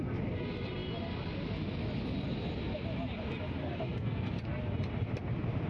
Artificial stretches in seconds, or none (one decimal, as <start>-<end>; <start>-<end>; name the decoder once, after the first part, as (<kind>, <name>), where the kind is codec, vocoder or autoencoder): 3.6-4.3 (codec, SNAC)